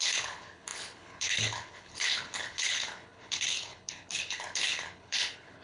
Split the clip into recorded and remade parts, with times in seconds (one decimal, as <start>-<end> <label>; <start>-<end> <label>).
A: 0.0-5.6 remade